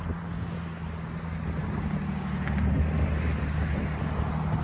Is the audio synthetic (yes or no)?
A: no